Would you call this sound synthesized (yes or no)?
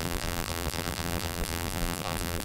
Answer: yes